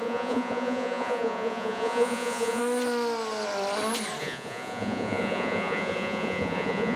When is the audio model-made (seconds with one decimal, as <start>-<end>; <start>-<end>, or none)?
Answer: 0.0-2.6; 4.2-7.0